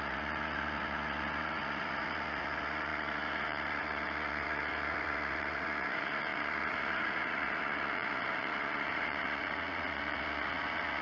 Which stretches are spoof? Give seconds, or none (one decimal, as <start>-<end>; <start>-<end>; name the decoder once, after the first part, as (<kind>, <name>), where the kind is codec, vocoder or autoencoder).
0.0-11.0 (vocoder, Vocos)